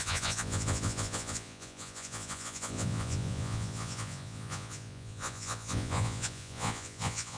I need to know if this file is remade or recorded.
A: remade